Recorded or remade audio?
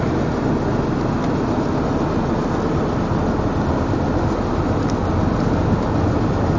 recorded